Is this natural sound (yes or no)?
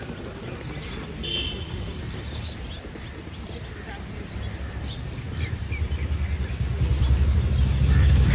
yes